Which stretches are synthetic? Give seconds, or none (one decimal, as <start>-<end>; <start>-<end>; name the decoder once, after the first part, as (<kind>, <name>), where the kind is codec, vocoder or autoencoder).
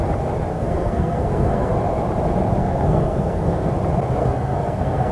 0.5-1.7 (codec, SNAC); 2.6-3.7; 4.2-5.1